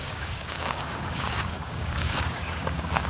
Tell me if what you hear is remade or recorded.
remade